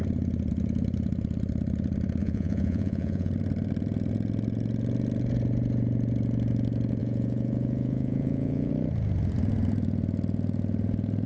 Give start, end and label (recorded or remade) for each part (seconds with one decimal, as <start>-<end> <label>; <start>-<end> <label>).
0.0-2.2 recorded; 2.2-3.3 remade; 3.3-7.0 recorded; 7.0-8.7 remade; 8.7-11.3 recorded